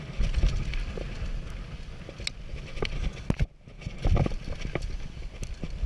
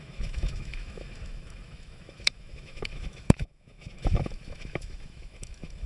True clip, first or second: first